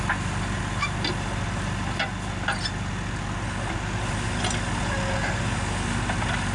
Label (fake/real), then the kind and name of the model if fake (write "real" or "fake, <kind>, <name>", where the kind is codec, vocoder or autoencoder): real